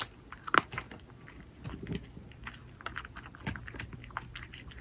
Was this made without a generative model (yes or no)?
yes